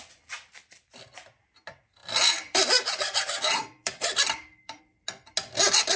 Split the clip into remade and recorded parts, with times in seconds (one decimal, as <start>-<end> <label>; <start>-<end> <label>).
0.0-2.0 recorded; 2.0-4.8 remade; 4.8-6.0 recorded